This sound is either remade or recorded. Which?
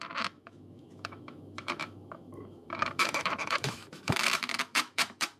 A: remade